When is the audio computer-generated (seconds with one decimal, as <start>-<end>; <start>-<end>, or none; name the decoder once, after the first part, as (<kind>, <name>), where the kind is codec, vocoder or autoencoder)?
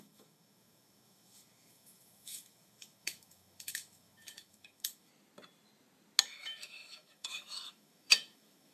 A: 0.0-5.1 (autoencoder, DAC-VAE); 6.2-8.7